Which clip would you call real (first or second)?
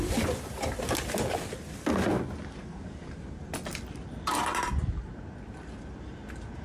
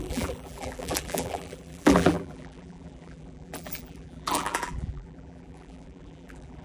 first